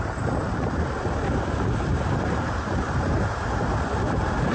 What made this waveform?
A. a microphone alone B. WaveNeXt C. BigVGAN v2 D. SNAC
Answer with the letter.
C